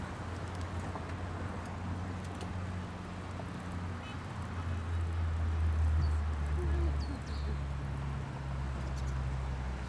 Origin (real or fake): real